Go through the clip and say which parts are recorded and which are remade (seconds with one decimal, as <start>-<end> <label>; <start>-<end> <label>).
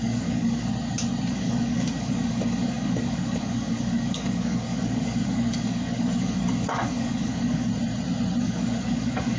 0.0-0.7 remade; 0.7-1.3 recorded; 1.3-7.7 remade; 7.7-8.4 recorded; 8.4-9.4 remade